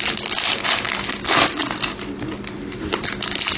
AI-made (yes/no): no